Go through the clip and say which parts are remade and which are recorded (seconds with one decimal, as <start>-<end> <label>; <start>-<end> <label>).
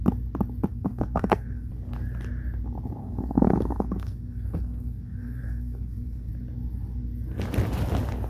0.0-0.7 recorded; 0.7-1.7 remade; 1.7-3.0 recorded; 3.0-6.3 remade; 6.3-8.3 recorded